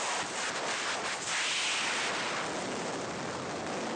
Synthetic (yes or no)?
no